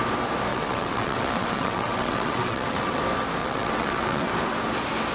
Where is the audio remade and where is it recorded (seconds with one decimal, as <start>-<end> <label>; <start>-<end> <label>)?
0.0-0.5 recorded; 0.5-3.0 remade; 3.0-3.4 recorded; 3.4-4.3 remade; 4.3-5.1 recorded